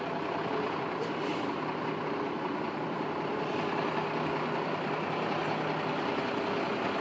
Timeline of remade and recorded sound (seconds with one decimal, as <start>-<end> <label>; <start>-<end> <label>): 0.0-7.0 recorded